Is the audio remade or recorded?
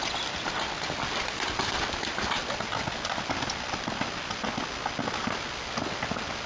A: recorded